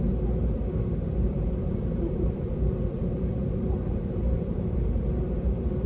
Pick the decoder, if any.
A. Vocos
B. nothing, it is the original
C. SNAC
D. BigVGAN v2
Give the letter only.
D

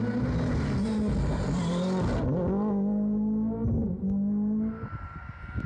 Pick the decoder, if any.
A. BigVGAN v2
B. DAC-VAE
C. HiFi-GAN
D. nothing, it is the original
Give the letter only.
D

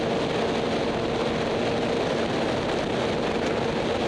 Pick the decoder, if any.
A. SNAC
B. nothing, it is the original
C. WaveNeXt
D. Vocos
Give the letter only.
B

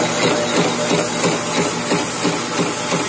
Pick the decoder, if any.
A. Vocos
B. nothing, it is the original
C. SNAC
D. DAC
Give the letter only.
B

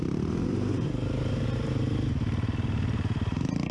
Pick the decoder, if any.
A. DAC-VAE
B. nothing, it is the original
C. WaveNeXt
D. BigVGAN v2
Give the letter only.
D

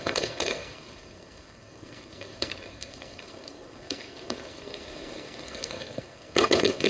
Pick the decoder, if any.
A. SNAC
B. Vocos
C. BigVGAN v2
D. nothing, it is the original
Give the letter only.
A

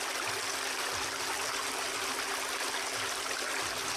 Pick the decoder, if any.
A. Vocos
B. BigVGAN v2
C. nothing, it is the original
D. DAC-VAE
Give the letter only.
C